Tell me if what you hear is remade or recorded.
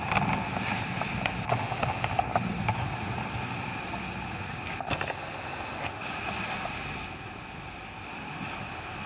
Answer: recorded